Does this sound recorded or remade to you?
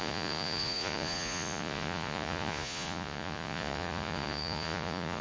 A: remade